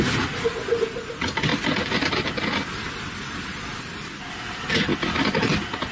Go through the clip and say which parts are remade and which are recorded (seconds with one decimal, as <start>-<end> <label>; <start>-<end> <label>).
0.0-5.9 recorded